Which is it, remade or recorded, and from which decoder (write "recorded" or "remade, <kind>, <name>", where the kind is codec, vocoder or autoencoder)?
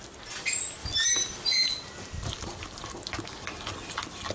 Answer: recorded